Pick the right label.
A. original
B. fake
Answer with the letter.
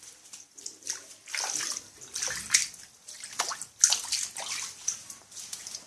A